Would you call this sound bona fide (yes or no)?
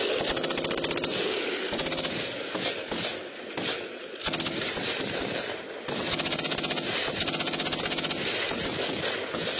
yes